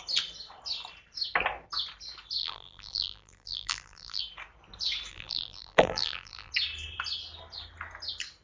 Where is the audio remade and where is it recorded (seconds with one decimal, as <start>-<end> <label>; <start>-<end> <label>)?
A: 0.0-2.4 recorded; 2.4-4.2 remade; 4.2-5.1 recorded; 5.1-6.5 remade; 6.5-8.4 recorded